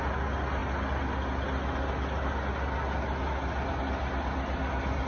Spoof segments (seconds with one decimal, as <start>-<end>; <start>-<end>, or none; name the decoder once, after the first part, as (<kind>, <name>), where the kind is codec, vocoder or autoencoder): none